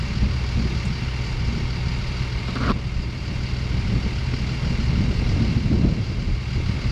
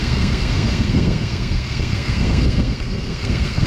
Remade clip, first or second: second